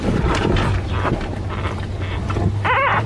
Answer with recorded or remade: recorded